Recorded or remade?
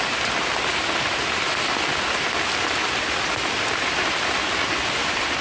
recorded